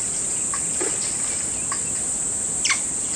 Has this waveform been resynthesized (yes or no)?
no